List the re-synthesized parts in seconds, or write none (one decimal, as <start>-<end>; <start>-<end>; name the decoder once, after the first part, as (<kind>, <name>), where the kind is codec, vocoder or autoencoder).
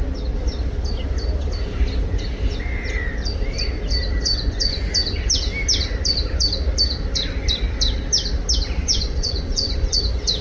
4.3-4.8 (vocoder, Vocos); 8.8-10.0